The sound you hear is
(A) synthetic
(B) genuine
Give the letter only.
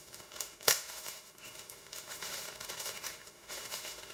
A